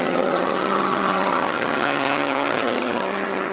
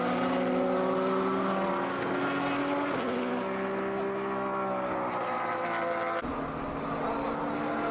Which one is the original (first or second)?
second